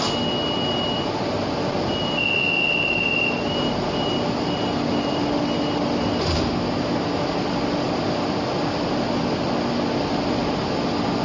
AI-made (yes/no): no